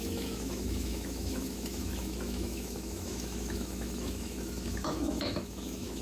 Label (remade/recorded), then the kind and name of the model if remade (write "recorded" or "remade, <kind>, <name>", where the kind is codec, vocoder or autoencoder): remade, autoencoder, DAC-VAE